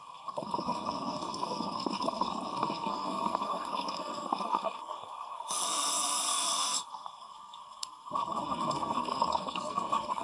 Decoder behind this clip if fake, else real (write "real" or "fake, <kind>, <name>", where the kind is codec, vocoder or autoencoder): fake, codec, SNAC